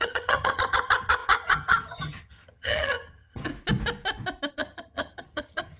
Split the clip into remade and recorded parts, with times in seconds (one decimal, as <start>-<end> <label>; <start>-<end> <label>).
0.0-3.5 remade; 3.5-4.5 recorded; 4.5-5.8 remade